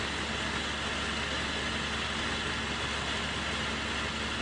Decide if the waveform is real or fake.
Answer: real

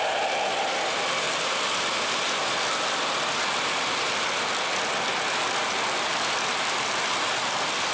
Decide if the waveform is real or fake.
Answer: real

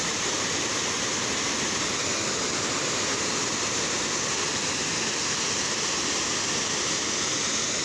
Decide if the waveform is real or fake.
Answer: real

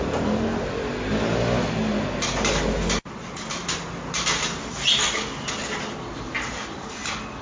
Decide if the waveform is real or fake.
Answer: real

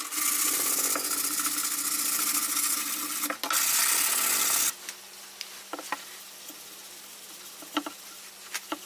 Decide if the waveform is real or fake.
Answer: real